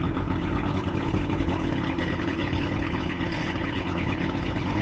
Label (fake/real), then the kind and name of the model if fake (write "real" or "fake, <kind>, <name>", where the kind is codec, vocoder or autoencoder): fake, codec, HILCodec